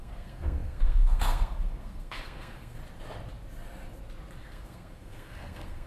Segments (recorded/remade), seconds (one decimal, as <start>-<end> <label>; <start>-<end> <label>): 0.0-2.8 remade; 2.8-4.4 recorded; 4.4-5.9 remade